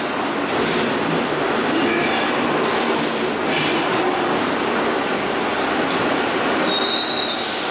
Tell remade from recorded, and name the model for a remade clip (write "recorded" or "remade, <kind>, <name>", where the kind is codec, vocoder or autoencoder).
recorded